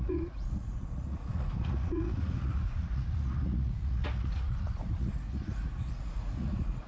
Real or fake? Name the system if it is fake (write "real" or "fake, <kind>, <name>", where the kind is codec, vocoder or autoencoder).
fake, vocoder, Vocos